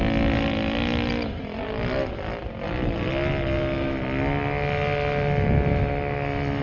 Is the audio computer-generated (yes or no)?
no